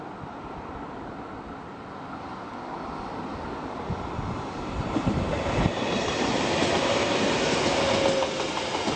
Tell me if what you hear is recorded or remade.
recorded